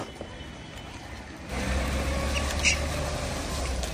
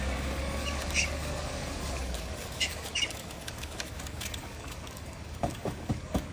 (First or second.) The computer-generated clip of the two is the second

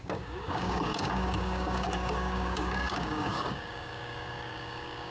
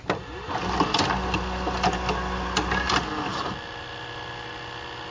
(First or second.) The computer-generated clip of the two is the first